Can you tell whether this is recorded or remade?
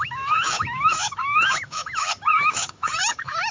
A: remade